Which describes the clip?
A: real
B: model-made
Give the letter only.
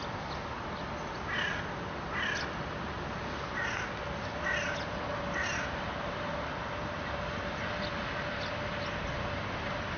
A